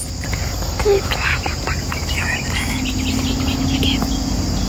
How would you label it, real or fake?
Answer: real